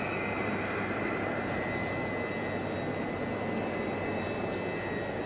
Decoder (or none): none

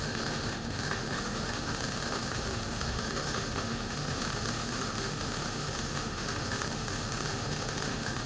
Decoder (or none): autoencoder, DAC-VAE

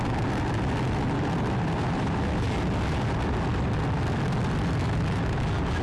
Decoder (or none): none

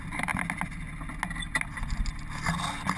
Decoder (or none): none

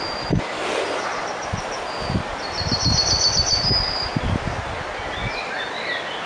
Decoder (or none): none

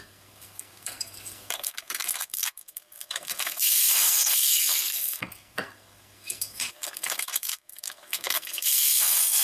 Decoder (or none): codec, SNAC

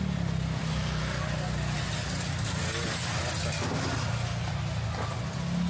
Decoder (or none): none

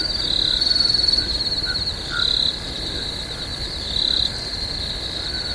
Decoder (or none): none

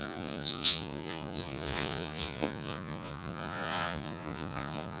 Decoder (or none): vocoder, Vocos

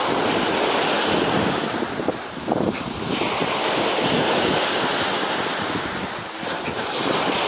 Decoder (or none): none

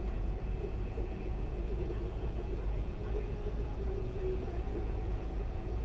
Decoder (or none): vocoder, Vocos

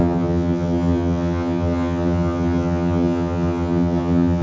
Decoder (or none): vocoder, HiFi-GAN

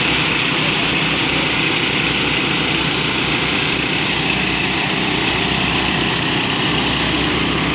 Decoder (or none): none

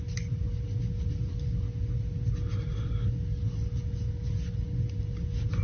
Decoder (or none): none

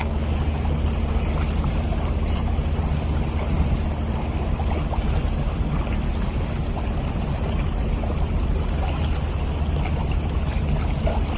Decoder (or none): none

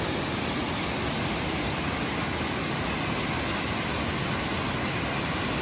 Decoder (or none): none